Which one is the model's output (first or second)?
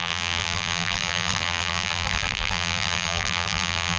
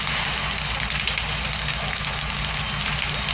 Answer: first